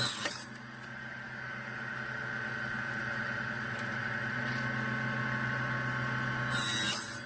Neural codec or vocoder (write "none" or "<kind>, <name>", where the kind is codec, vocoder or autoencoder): none